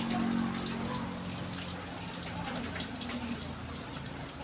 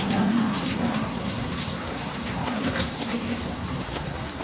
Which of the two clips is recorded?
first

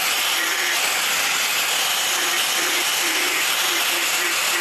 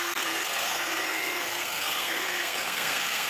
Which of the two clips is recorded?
first